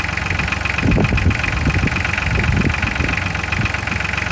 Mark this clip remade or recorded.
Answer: recorded